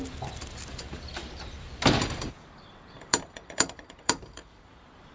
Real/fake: fake